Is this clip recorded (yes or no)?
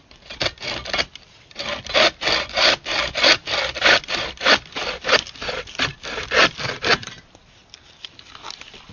yes